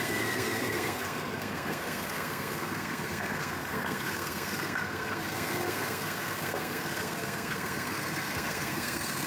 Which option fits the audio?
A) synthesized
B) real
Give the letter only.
A